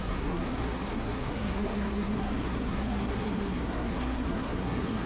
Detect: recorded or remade remade